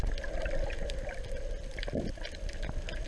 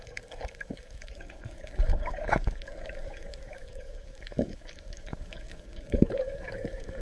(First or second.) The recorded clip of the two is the first